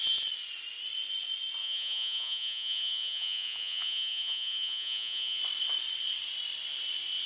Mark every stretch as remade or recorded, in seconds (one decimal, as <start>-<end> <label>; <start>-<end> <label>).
0.0-1.6 recorded; 1.6-5.4 remade; 5.4-7.3 recorded